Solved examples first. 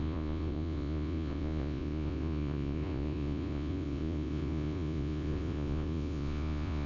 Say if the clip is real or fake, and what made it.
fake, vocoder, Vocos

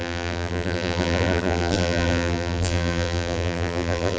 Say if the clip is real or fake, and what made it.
fake, vocoder, BigVGAN v2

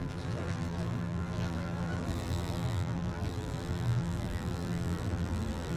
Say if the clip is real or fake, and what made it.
fake, vocoder, BigVGAN v2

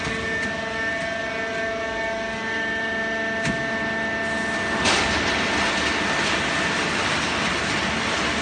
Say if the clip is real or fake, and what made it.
real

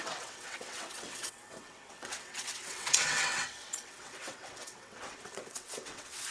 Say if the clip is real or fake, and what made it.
fake, vocoder, WaveNeXt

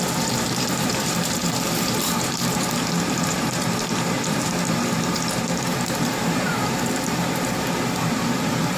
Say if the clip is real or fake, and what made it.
fake, vocoder, BigVGAN v2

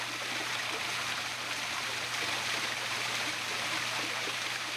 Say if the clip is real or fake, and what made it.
real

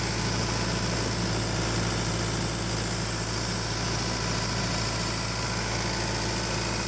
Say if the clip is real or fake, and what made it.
real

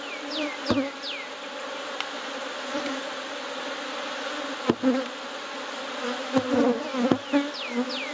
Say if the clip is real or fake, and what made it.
real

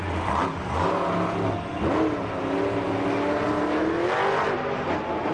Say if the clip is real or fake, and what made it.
real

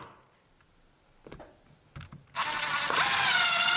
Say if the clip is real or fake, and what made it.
real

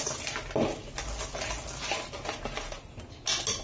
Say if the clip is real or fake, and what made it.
real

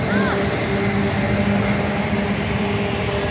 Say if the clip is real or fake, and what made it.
real